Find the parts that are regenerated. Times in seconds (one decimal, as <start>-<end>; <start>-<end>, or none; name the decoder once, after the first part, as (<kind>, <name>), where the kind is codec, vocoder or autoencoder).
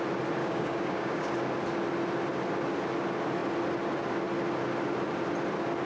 0.4-1.3 (codec, DAC)